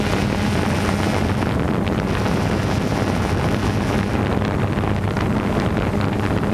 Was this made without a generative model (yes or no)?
yes